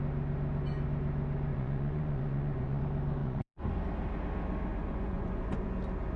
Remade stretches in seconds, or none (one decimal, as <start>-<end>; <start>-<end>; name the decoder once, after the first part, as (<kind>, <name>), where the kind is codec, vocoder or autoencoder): 1.5-2.8 (vocoder, Vocos); 3.2-3.8; 4.7-5.7